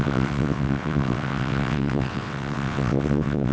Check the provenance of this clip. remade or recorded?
remade